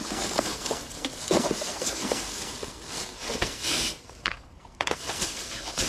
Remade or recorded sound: remade